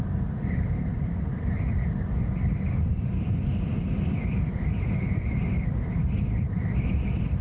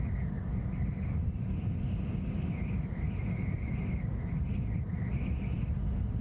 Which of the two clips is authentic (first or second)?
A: second